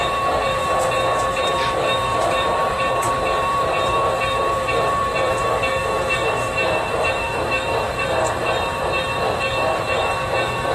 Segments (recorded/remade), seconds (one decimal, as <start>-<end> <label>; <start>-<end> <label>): 0.0-0.6 remade; 0.6-1.3 recorded; 1.3-10.7 remade